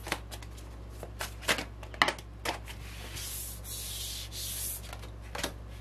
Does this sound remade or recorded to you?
recorded